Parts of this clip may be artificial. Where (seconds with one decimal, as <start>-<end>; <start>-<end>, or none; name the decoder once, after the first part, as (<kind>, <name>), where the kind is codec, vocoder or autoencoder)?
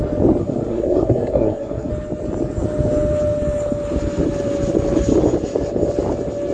0.4-1.9 (codec, SNAC)